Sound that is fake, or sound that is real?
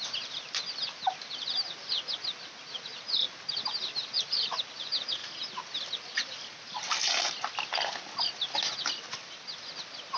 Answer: real